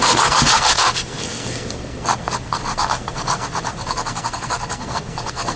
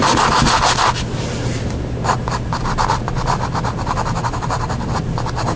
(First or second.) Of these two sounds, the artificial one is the first